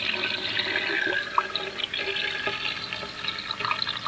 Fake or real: real